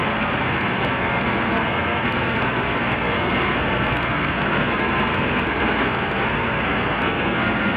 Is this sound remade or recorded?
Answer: remade